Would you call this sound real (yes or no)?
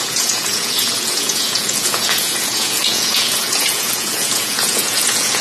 no